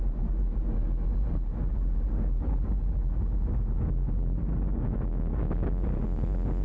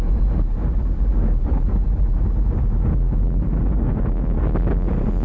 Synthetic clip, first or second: second